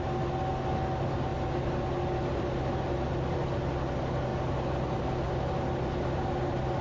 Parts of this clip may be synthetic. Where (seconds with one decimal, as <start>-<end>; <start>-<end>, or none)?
none